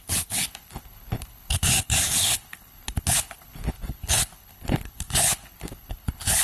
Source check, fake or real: fake